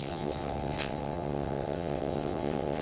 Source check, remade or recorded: remade